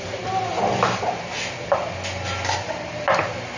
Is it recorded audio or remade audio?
recorded